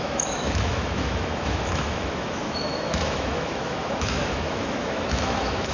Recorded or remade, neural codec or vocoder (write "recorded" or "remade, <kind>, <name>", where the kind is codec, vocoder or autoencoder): remade, autoencoder, DAC-VAE